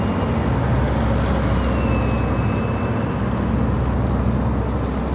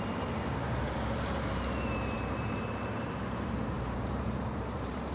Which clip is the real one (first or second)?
first